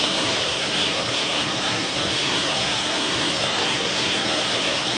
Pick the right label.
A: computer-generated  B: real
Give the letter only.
A